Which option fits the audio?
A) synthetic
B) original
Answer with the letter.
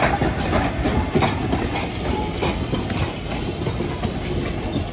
B